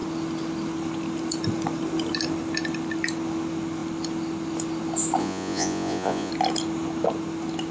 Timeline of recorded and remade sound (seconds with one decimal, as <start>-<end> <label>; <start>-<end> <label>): 0.0-5.2 recorded; 5.2-6.3 remade; 6.3-7.7 recorded